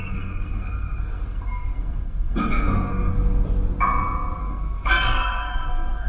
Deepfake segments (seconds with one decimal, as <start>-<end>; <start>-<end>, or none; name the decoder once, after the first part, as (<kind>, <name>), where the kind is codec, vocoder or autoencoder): 0.0-3.1 (codec, SNAC); 4.4-6.1